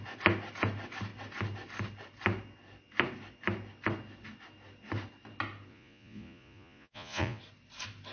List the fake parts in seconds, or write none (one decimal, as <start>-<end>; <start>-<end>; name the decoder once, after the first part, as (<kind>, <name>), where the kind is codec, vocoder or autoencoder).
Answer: 5.7-7.4 (vocoder, Vocos)